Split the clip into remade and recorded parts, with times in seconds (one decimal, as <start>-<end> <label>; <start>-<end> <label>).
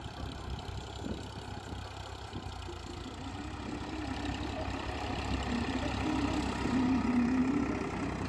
0.0-8.3 recorded